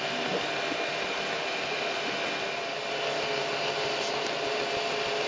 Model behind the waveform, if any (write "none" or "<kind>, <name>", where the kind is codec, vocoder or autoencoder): none